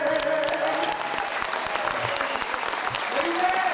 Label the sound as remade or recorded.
recorded